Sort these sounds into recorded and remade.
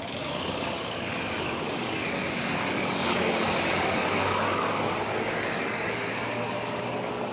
remade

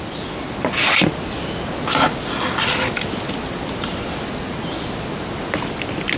recorded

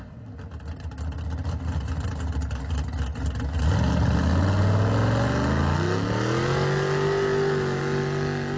recorded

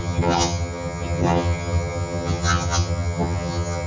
remade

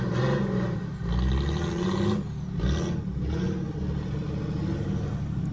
recorded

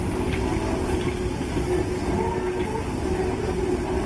recorded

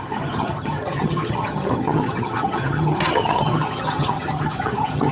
remade